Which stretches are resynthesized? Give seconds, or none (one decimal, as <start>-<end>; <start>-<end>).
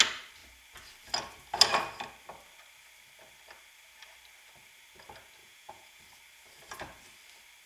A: 5.4-6.0